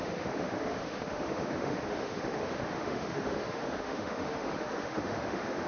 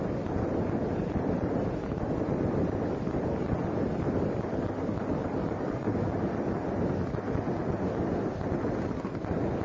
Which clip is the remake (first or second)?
first